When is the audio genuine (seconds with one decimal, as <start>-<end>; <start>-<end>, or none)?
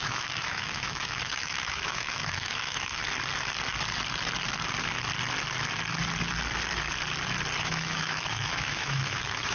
3.0-7.6